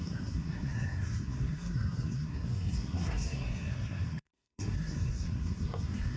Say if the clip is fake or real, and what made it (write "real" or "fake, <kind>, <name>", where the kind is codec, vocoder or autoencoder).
fake, codec, SNAC